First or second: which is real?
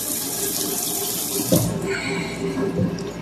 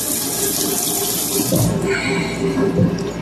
second